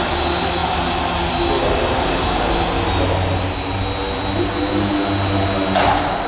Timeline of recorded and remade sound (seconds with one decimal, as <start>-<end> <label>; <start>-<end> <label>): 0.0-6.3 recorded